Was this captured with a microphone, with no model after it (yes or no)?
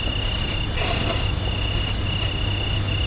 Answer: yes